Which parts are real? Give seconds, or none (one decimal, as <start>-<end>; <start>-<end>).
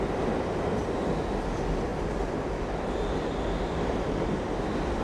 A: 0.0-5.0